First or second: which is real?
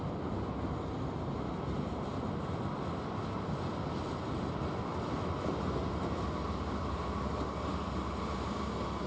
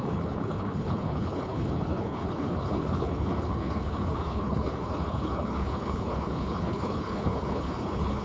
first